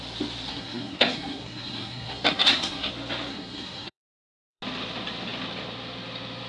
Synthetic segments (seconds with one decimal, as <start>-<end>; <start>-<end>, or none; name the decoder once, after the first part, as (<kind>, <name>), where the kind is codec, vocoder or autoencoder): 0.5-2.9 (codec, SNAC); 3.3-4.6